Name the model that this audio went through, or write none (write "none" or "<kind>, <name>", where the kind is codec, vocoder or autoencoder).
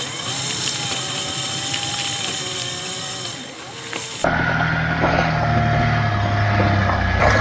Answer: none